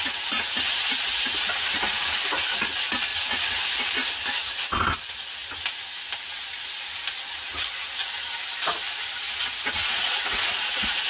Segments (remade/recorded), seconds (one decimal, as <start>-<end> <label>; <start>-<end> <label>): 0.0-3.1 recorded; 3.1-3.7 remade; 3.7-9.8 recorded; 9.8-11.1 remade